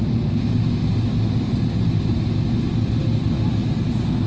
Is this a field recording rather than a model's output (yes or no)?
yes